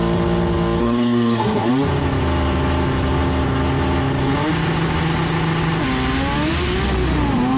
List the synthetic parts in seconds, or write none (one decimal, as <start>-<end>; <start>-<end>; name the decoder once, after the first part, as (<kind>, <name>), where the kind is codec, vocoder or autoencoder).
0.8-1.7 (codec, SNAC)

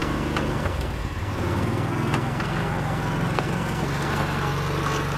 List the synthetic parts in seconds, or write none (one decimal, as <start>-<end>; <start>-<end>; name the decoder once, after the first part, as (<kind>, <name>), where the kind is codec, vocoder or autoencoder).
0.0-4.5 (codec, SNAC)

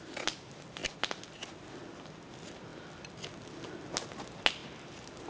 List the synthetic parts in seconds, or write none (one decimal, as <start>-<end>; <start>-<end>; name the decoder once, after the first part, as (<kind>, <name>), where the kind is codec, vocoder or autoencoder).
none

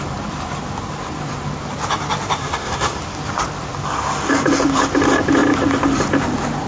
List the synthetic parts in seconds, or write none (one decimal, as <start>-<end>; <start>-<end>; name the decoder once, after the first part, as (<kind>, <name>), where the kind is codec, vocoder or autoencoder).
2.4-3.0 (codec, SNAC)

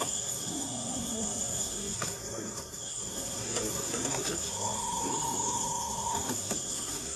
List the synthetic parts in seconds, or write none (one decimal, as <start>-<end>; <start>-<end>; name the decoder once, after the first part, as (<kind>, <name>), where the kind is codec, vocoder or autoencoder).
0.0-7.2 (codec, SNAC)